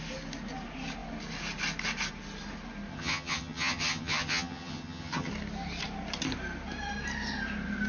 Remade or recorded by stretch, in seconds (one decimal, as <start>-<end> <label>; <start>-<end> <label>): 0.0-2.9 recorded; 2.9-5.3 remade; 5.3-7.9 recorded